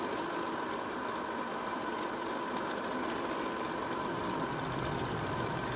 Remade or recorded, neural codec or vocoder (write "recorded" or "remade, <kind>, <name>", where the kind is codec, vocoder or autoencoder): recorded